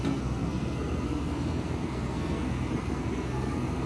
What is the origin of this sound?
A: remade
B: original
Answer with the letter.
A